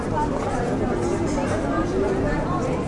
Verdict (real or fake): real